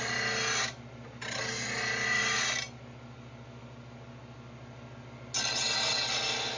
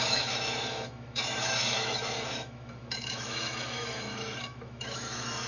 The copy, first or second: second